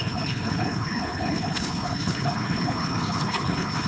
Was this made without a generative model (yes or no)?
no